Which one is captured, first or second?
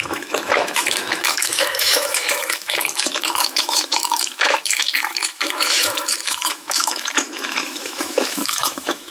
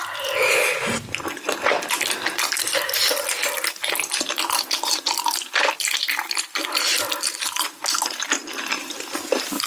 second